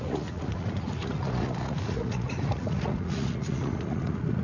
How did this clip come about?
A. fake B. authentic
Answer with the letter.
A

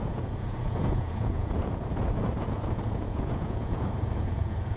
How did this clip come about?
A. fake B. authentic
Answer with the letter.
A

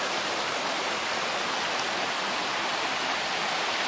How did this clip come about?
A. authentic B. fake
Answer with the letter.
B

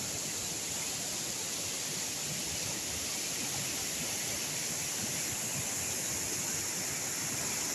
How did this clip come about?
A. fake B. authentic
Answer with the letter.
B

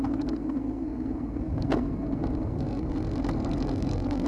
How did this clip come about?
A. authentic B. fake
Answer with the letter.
B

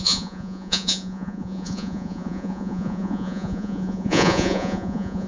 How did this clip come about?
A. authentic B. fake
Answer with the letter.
B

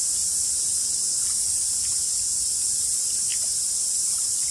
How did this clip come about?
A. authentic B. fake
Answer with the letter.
A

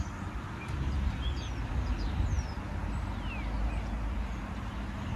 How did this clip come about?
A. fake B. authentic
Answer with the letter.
B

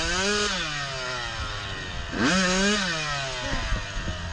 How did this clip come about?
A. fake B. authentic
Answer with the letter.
B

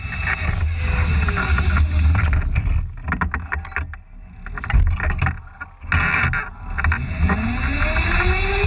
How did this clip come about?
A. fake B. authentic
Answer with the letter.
B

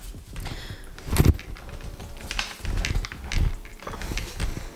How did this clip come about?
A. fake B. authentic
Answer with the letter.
B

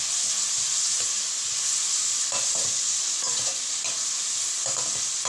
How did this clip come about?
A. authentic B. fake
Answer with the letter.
A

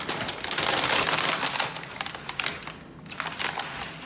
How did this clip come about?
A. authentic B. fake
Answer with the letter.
A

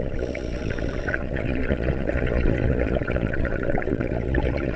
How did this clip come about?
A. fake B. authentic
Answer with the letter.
A